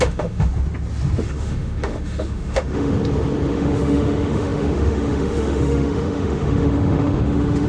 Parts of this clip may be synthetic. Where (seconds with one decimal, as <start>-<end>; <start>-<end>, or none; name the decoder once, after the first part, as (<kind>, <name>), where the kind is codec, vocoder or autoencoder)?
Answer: 0.0-0.5 (autoencoder, DAC-VAE); 1.2-2.9; 3.5-7.7